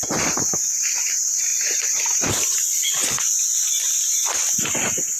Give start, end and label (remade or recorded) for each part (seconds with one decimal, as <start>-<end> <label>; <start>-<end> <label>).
0.0-5.2 recorded